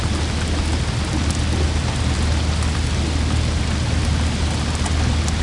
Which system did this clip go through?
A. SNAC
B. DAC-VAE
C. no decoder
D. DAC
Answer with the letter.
C